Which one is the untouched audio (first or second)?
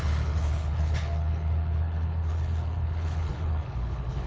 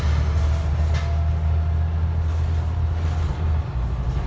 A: second